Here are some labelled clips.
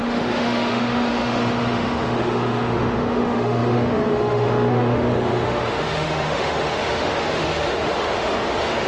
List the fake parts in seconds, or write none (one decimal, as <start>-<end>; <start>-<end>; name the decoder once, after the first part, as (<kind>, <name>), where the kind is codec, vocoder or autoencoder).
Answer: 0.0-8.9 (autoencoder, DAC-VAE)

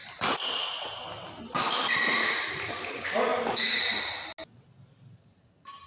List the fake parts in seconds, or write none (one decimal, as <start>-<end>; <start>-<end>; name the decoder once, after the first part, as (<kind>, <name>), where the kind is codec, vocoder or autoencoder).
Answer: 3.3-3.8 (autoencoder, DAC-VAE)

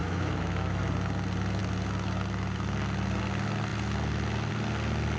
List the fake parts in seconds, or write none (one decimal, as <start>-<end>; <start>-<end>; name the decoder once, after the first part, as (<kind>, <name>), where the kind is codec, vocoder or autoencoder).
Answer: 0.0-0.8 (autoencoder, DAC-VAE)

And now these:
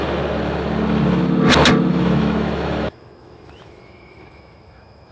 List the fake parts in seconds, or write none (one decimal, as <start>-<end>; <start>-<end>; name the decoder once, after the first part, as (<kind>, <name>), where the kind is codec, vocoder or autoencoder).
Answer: 1.9-5.1 (autoencoder, DAC-VAE)

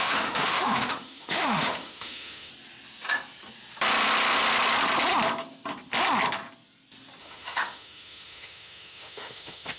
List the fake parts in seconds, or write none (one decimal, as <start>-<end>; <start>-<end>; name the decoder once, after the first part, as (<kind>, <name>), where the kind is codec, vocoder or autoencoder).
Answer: 0.0-2.5 (autoencoder, DAC-VAE); 7.2-9.8

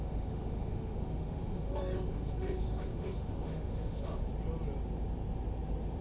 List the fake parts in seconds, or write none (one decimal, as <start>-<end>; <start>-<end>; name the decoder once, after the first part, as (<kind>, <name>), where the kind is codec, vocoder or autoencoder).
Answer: 0.0-4.2 (autoencoder, DAC-VAE)

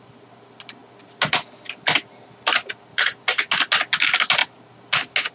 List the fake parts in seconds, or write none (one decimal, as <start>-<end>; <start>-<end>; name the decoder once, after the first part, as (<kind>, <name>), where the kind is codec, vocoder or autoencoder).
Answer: none